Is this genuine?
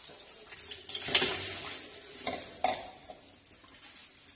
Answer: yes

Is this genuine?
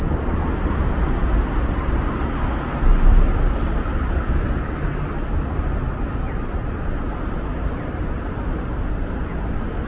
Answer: yes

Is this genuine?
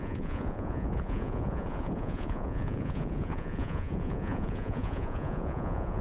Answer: no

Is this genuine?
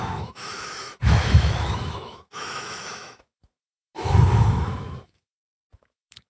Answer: no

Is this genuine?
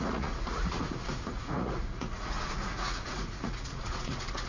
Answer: no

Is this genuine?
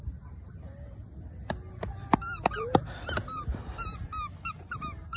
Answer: yes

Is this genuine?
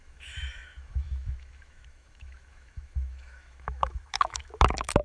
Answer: no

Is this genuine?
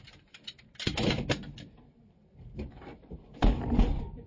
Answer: no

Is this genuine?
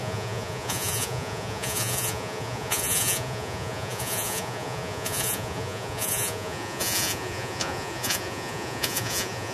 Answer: no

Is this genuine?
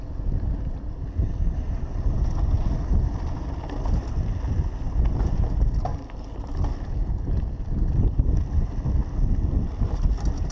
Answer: yes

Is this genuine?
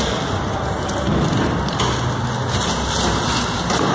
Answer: yes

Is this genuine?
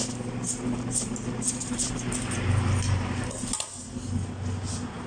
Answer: yes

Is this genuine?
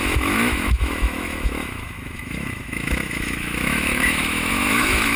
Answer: no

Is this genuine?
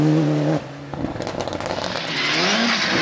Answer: yes